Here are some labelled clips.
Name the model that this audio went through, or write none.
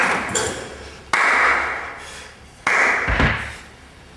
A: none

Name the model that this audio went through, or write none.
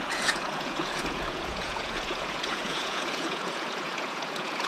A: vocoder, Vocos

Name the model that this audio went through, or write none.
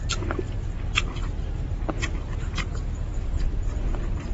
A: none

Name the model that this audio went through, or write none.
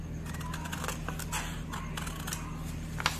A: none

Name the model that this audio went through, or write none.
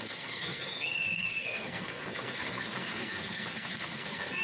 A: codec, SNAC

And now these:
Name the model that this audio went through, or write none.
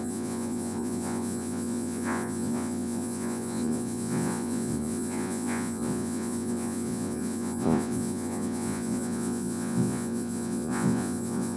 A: vocoder, Vocos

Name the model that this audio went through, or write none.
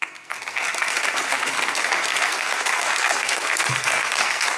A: codec, SNAC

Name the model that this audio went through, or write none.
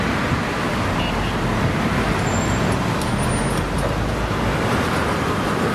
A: none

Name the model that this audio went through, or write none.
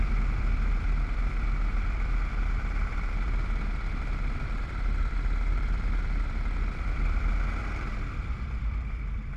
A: vocoder, BigVGAN v2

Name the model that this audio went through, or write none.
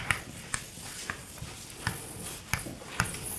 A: none